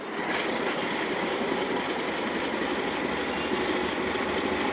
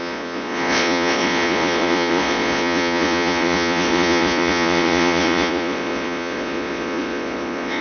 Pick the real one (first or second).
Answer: first